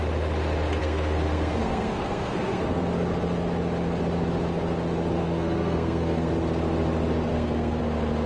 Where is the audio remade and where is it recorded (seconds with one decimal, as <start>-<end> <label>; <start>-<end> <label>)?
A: 0.0-0.8 recorded; 0.8-2.8 remade; 2.8-5.2 recorded; 5.2-6.3 remade; 6.3-7.3 recorded; 7.3-7.8 remade; 7.8-8.3 recorded